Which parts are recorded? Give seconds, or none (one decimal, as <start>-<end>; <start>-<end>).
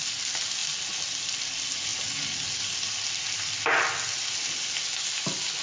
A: 0.0-5.6